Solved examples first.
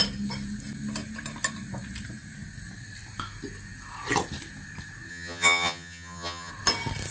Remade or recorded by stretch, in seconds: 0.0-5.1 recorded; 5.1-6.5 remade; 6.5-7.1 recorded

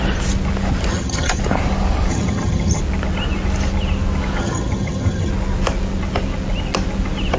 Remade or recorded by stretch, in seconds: 0.0-0.9 recorded; 0.9-1.4 remade; 1.4-2.1 recorded; 2.1-2.8 remade; 2.8-4.4 recorded; 4.4-5.3 remade; 5.3-7.4 recorded

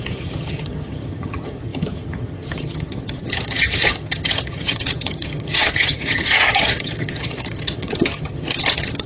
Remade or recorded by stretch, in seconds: 0.0-9.1 remade

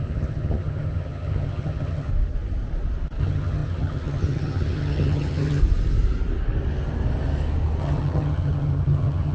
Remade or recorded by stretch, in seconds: 0.0-2.1 remade; 2.1-3.2 recorded; 3.2-5.6 remade; 5.6-7.8 recorded; 7.8-9.3 remade

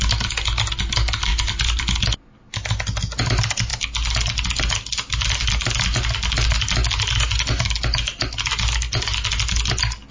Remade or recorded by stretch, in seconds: 0.0-10.1 recorded

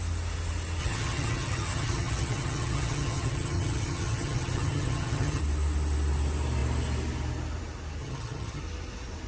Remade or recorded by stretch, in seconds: 0.0-0.8 recorded; 0.8-5.4 remade; 5.4-8.0 recorded; 8.0-8.6 remade; 8.6-9.3 recorded